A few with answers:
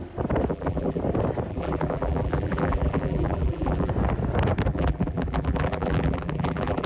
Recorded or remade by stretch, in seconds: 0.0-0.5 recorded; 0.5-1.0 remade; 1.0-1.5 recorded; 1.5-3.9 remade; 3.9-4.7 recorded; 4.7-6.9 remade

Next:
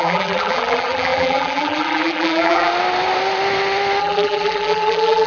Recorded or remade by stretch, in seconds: 0.0-2.7 remade; 2.7-4.0 recorded; 4.0-5.3 remade

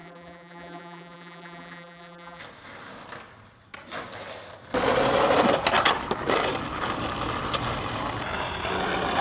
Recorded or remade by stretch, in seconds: 0.0-2.4 remade; 2.4-9.2 recorded

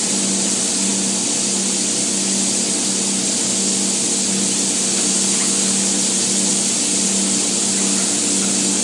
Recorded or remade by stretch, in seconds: 0.0-8.8 recorded

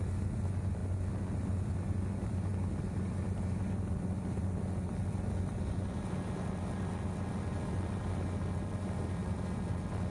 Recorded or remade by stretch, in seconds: 0.0-0.8 remade; 0.8-1.4 recorded; 1.4-10.1 remade

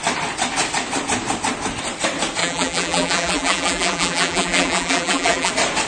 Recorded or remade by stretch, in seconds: 0.0-2.4 recorded; 2.4-5.5 remade; 5.5-5.9 recorded

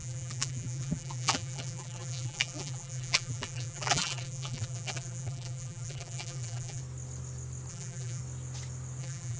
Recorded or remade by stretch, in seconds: 0.0-6.8 remade; 6.8-7.7 recorded; 7.7-8.2 remade; 8.2-9.0 recorded; 9.0-9.4 remade

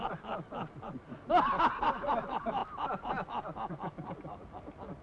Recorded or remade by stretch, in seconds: 0.0-5.0 recorded